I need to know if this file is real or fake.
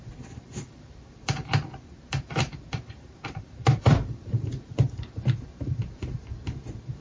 fake